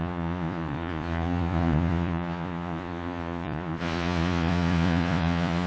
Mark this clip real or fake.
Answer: fake